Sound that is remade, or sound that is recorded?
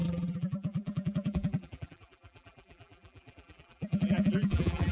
remade